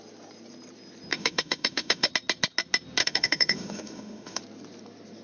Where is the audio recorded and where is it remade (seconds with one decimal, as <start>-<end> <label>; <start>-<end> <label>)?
0.0-1.1 recorded; 1.1-2.1 remade; 2.1-3.0 recorded; 3.0-4.4 remade; 4.4-5.2 recorded